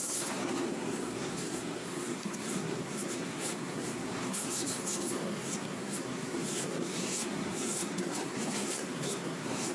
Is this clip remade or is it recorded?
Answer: remade